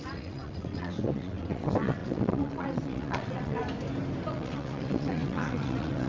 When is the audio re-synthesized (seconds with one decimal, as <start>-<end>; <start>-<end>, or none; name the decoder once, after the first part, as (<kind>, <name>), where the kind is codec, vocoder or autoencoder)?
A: 0.0-3.6 (vocoder, WaveNeXt); 4.3-6.1